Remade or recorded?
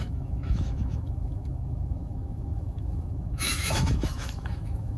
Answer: remade